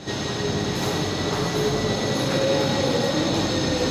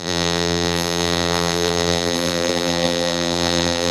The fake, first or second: second